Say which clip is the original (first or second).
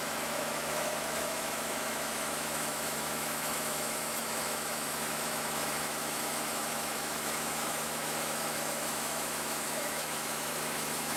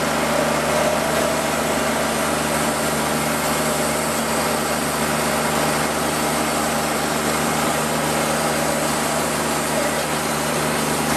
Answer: second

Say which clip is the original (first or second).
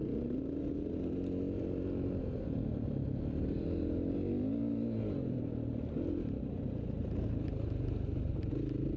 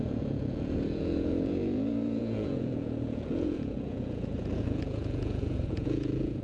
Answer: first